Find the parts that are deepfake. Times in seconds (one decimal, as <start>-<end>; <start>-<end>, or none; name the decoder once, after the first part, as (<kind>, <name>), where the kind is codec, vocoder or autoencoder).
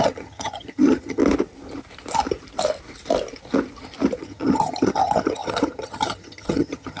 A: 0.0-1.2 (vocoder, HiFi-GAN); 4.2-7.0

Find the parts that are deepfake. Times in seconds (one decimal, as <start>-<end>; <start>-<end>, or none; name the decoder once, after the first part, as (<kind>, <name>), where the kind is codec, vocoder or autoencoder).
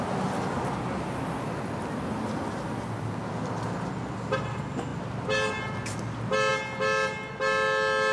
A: none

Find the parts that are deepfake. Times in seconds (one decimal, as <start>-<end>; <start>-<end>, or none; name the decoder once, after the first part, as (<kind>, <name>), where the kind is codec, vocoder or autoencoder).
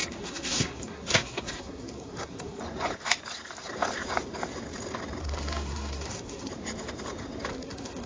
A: 0.0-2.6 (codec, SNAC); 5.2-6.5; 7.5-8.1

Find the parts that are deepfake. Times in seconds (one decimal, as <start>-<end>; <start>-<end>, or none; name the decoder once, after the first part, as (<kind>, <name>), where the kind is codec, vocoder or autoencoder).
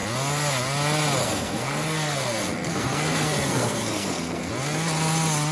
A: 1.2-4.5 (codec, SNAC)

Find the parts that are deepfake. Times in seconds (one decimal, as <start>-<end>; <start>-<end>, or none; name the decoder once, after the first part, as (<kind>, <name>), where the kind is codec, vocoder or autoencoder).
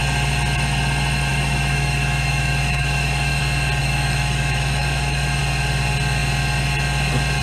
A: 1.3-3.4 (autoencoder, DAC-VAE); 3.8-5.4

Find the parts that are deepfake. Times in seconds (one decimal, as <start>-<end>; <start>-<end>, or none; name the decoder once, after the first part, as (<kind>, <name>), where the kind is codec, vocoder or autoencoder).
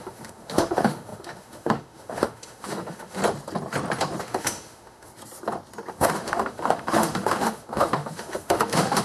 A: 0.0-3.2 (autoencoder, DAC-VAE); 4.2-5.1; 5.9-9.0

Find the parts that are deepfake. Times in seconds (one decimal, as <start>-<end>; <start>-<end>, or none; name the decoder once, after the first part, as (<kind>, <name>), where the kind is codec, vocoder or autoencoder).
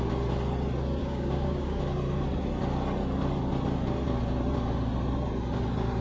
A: 1.0-1.8 (codec, DAC)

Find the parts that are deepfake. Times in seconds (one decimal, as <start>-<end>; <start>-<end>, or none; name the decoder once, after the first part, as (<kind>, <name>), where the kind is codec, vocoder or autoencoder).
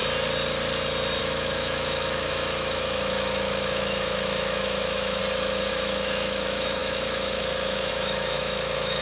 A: 1.2-5.2 (autoencoder, DAC-VAE); 5.7-9.0